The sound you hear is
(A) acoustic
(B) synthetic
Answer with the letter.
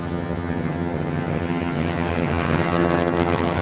B